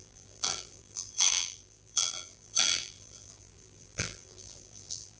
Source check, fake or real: fake